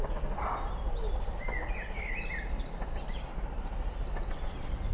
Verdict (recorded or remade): recorded